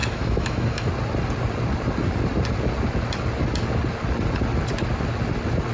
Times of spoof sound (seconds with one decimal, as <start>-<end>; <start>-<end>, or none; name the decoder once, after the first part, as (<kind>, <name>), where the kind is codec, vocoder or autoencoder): 0.0-0.9 (autoencoder, DAC-VAE)